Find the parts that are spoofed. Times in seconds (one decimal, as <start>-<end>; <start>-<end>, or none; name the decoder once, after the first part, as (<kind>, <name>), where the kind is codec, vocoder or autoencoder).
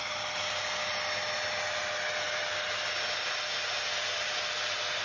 none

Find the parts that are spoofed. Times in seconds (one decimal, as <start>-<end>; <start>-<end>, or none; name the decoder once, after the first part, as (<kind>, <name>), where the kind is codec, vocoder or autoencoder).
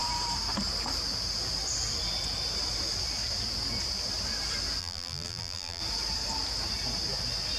4.8-5.8 (vocoder, BigVGAN v2)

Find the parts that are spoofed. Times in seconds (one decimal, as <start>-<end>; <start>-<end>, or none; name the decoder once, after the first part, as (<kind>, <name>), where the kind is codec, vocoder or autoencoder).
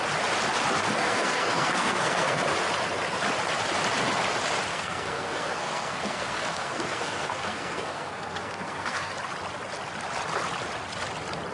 1.0-2.4 (codec, SNAC); 4.7-9.1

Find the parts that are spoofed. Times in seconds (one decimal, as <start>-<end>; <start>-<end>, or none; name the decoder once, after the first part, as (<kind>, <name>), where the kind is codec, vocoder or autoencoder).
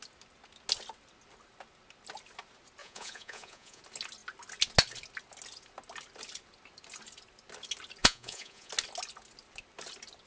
2.8-3.8 (vocoder, Vocos); 8.0-8.7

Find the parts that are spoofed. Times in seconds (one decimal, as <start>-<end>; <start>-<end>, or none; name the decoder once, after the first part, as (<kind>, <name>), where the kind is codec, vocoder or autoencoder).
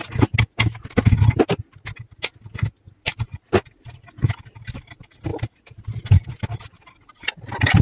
none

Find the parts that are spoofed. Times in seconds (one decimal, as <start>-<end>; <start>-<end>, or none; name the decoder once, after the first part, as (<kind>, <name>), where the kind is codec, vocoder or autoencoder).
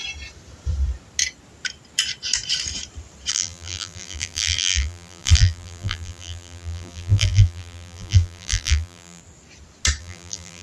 3.3-9.2 (vocoder, BigVGAN v2); 10.0-10.6